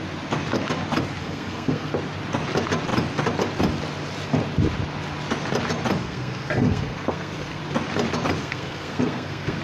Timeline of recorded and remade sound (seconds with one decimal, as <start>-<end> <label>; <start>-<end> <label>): 0.0-1.2 recorded; 1.2-1.9 remade; 1.9-6.0 recorded; 6.0-7.6 remade; 7.6-8.4 recorded; 8.4-9.6 remade